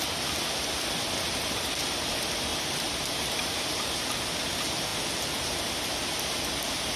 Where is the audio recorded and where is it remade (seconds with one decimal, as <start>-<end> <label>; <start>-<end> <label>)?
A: 0.0-2.5 recorded; 2.5-4.0 remade; 4.0-7.0 recorded